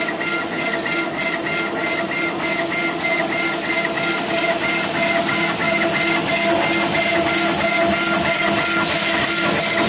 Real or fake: real